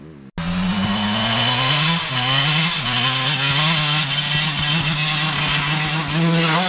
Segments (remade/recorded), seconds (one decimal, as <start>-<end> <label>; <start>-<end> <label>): 0.0-6.7 recorded